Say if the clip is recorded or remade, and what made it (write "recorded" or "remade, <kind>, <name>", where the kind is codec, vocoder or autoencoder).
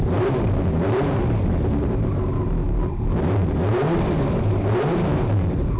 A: remade, vocoder, BigVGAN v2